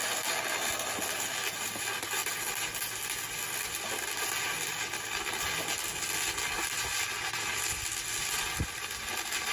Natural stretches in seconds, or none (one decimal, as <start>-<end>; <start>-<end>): 0.0-9.5